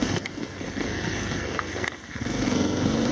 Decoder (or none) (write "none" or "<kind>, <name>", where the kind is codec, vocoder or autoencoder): codec, SNAC